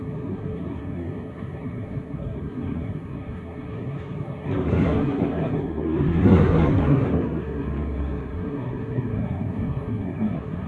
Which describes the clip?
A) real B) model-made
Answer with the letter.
B